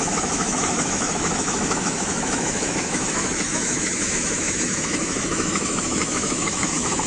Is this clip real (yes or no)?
no